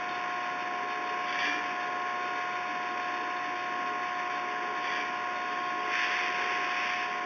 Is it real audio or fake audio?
real